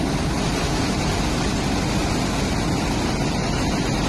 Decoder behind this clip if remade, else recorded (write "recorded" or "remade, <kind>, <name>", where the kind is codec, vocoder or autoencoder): recorded